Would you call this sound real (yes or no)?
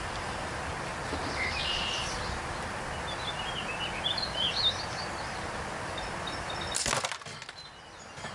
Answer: yes